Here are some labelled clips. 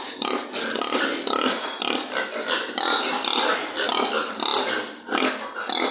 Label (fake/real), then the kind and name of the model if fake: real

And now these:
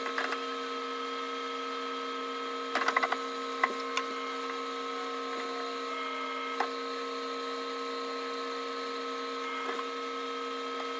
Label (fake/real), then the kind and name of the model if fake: real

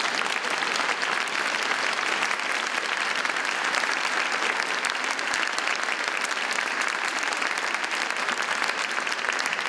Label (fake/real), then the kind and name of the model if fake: fake, vocoder, BigVGAN v2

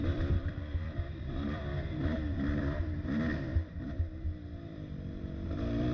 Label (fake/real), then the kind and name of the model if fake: fake, vocoder, BigVGAN v2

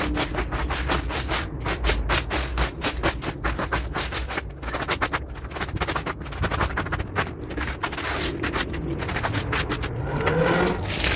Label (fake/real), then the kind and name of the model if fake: real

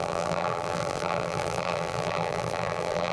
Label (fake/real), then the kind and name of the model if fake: fake, vocoder, BigVGAN v2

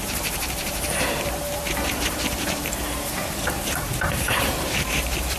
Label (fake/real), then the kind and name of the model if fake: fake, vocoder, BigVGAN v2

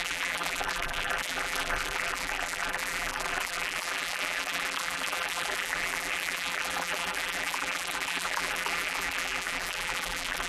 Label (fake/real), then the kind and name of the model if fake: fake, vocoder, BigVGAN v2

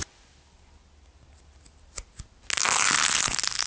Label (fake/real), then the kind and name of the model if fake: real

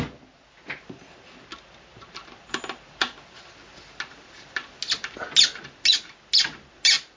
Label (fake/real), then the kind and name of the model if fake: real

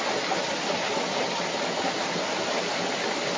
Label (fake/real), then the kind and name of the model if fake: real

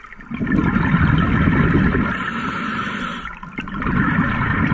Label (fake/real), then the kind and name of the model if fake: fake, vocoder, BigVGAN v2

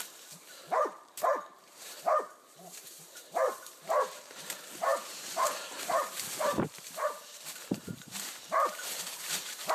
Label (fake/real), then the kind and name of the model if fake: fake, vocoder, BigVGAN v2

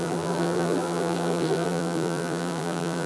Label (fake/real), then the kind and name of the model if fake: fake, vocoder, BigVGAN v2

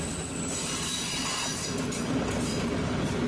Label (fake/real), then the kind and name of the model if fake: fake, vocoder, BigVGAN v2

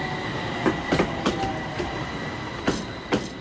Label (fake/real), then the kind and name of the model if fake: real